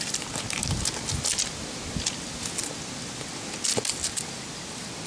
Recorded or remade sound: recorded